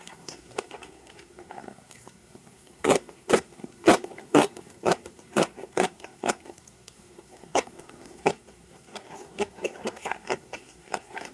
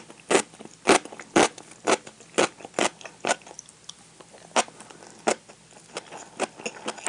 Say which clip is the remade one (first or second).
first